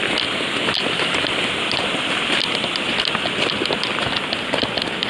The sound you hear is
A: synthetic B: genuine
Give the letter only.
B